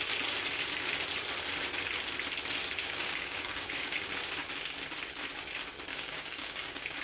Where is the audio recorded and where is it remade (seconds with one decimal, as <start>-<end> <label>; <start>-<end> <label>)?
0.0-2.8 recorded; 2.8-4.3 remade; 4.3-5.9 recorded; 5.9-7.0 remade